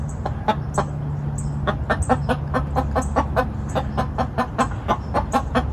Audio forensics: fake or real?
real